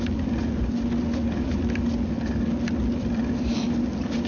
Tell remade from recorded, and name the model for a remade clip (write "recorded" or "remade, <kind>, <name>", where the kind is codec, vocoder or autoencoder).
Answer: recorded